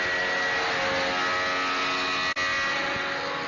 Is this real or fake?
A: real